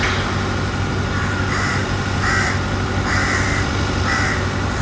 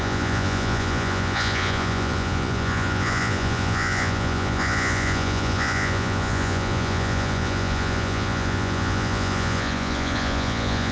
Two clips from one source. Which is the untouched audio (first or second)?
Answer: first